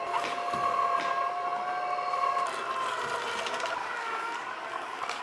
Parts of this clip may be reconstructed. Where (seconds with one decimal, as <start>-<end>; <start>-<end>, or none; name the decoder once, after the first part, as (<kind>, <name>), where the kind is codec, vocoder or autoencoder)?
3.8-5.2 (codec, DAC)